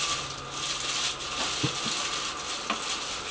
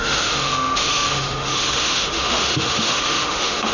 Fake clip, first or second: second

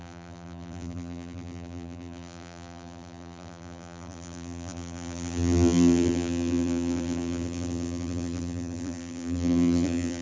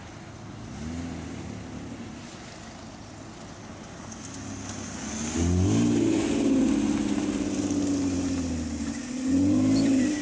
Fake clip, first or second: first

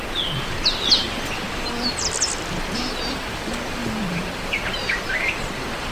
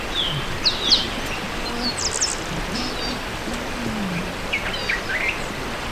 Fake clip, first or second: first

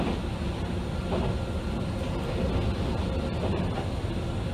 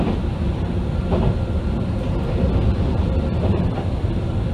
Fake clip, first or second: second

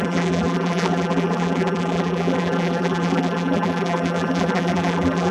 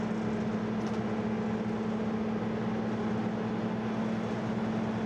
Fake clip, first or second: first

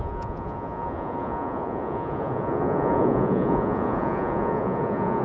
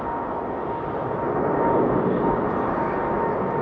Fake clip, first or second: first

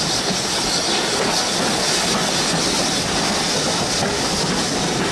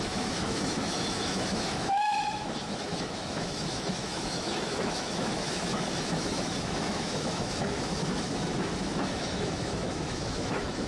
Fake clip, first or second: second